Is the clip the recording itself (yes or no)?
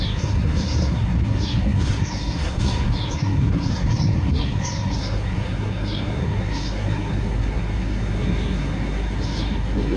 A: no